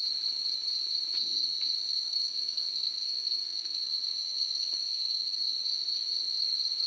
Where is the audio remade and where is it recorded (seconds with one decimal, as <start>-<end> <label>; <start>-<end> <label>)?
0.0-1.8 recorded; 1.8-5.5 remade; 5.5-6.9 recorded

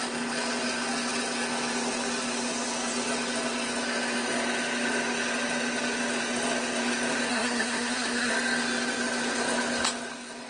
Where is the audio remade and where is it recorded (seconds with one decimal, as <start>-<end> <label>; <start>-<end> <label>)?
0.0-7.3 recorded; 7.3-8.3 remade; 8.3-10.5 recorded